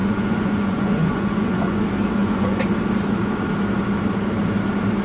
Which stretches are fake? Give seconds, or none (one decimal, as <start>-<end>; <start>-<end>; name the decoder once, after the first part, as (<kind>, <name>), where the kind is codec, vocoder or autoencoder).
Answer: 0.0-1.8 (vocoder, Vocos); 2.2-2.7